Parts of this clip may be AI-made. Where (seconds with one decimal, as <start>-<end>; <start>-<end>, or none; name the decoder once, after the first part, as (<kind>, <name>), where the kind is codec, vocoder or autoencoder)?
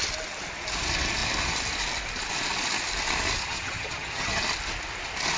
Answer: 3.4-4.4 (vocoder, HiFi-GAN)